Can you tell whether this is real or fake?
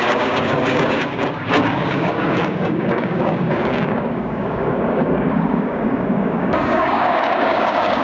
fake